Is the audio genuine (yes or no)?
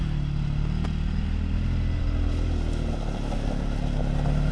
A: yes